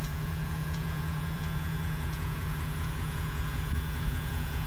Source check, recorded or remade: remade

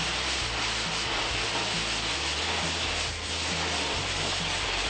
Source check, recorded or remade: recorded